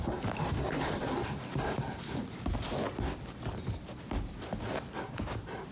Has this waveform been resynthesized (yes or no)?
no